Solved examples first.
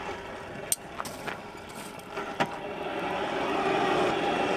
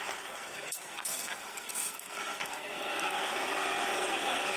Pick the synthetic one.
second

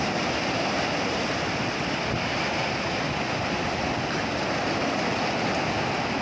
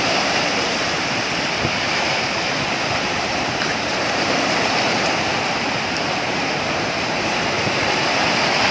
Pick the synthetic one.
second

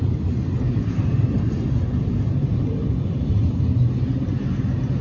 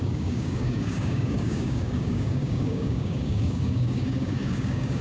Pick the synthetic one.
second